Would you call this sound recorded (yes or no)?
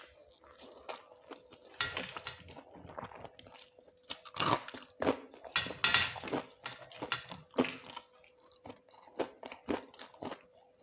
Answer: yes